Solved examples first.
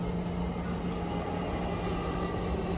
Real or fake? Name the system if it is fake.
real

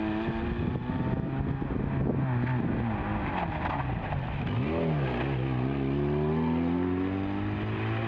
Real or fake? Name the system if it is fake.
real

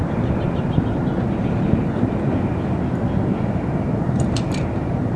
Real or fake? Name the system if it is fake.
real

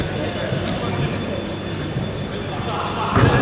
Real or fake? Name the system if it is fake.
real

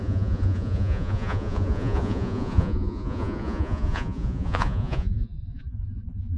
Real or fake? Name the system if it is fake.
fake, vocoder, Vocos